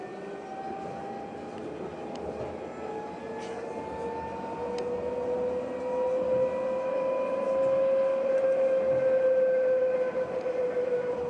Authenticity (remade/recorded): recorded